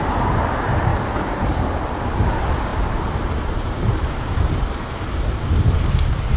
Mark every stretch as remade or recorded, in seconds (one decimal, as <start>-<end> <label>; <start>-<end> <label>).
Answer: 0.0-6.4 remade